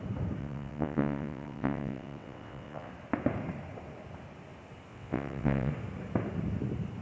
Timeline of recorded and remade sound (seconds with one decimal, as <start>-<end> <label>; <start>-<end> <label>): 0.0-0.4 recorded; 0.4-2.9 remade; 2.9-4.9 recorded; 4.9-5.7 remade; 5.7-7.0 recorded